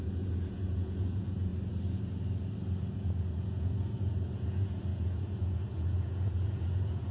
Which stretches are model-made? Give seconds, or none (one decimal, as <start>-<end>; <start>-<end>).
0.0-1.5; 2.8-7.1